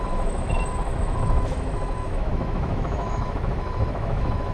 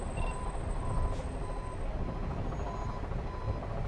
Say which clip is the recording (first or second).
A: second